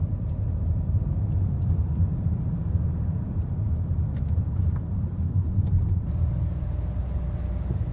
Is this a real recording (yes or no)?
no